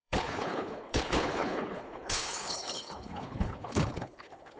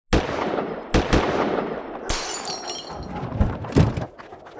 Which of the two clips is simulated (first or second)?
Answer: first